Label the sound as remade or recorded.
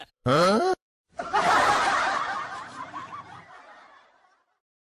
remade